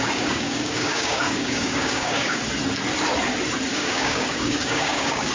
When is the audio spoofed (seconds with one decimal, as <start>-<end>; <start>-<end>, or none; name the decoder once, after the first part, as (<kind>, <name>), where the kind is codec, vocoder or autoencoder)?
0.0-2.4 (codec, DAC); 3.7-5.3